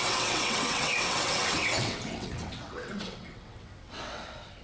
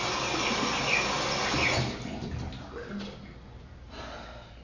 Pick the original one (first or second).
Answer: second